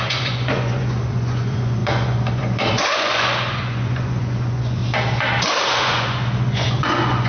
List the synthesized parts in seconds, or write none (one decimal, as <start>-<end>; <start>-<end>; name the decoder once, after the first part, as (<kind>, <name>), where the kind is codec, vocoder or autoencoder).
0.0-4.8 (vocoder, Vocos); 5.7-7.3